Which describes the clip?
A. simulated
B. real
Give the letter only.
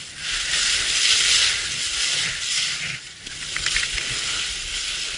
B